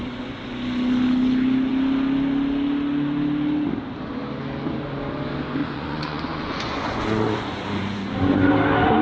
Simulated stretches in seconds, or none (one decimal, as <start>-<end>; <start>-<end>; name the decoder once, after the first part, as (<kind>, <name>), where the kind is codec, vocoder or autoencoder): 5.6-8.5 (vocoder, Vocos)